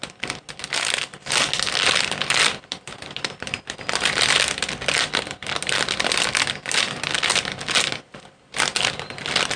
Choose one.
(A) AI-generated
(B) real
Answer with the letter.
B